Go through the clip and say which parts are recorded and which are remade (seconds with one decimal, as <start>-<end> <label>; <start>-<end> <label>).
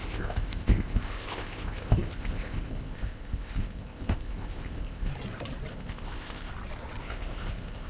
0.0-5.1 remade; 5.1-5.7 recorded; 5.7-6.5 remade; 6.5-7.0 recorded; 7.0-7.9 remade